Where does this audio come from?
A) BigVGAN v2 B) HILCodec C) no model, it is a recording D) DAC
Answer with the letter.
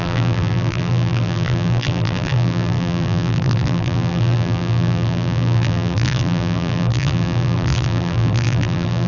A